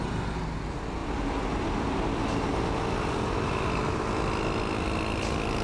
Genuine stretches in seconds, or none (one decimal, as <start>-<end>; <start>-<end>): 0.0-5.6